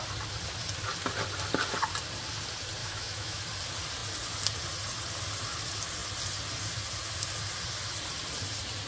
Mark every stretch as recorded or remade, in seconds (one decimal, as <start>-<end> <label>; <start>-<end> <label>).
0.0-2.8 recorded; 2.8-3.4 remade; 3.4-8.9 recorded